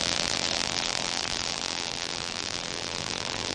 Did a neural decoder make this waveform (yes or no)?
yes